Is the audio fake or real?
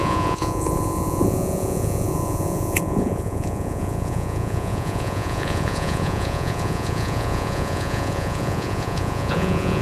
fake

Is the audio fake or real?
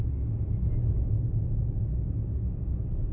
real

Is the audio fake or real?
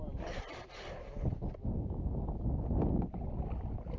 real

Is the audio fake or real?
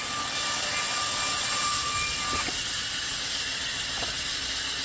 real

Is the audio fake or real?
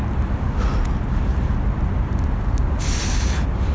real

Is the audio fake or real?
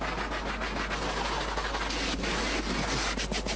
real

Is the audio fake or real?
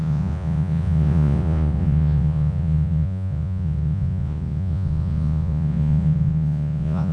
fake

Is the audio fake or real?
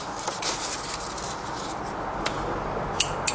real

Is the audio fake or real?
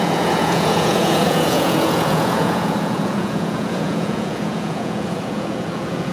fake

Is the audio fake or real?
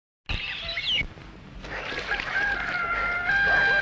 real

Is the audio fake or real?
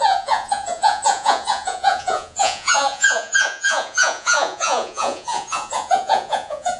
fake